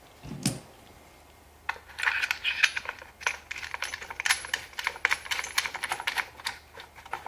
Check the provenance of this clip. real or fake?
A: real